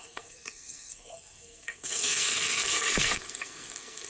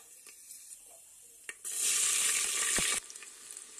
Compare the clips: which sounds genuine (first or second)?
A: second